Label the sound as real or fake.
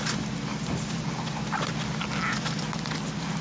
real